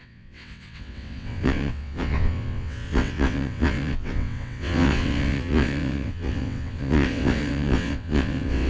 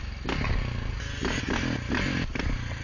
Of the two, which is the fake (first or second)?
first